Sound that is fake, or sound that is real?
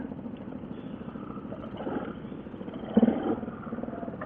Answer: real